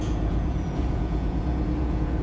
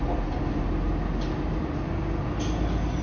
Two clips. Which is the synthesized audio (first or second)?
first